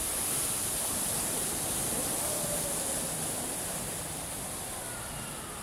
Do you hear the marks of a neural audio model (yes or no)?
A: yes